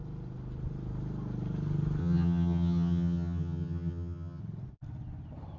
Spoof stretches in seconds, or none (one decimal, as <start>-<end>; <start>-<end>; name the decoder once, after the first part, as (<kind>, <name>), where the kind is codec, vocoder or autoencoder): 2.0-4.4 (vocoder, HiFi-GAN)